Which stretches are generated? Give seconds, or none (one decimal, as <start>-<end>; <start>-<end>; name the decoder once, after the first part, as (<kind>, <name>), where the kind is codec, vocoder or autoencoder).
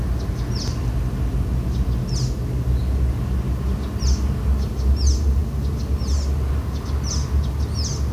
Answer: none